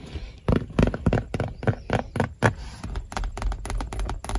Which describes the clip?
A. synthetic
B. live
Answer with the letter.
B